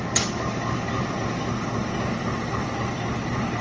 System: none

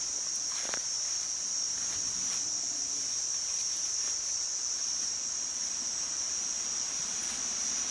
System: none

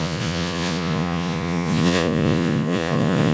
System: vocoder, Vocos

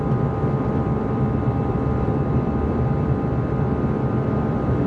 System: vocoder, BigVGAN v2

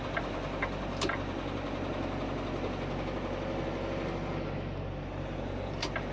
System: none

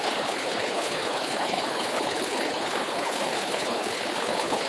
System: codec, HILCodec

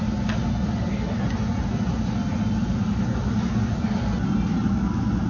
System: none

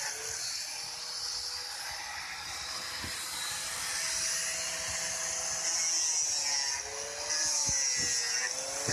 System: none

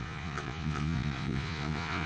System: vocoder, Vocos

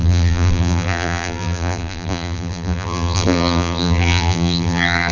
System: vocoder, BigVGAN v2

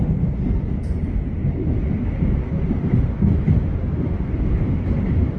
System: none